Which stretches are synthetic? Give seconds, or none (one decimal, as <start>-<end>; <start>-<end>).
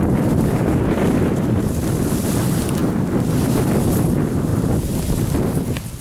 none